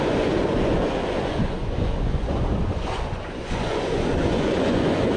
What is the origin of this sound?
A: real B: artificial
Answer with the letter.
B